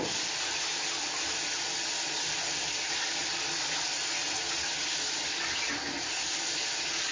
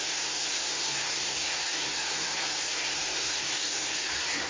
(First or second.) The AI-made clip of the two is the second